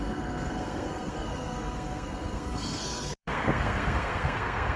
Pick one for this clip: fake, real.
fake